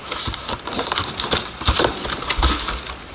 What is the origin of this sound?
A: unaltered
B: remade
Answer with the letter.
A